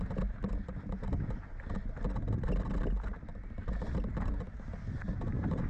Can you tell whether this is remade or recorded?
recorded